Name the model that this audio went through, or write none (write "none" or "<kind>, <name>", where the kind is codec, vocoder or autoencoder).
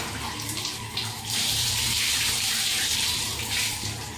vocoder, BigVGAN v2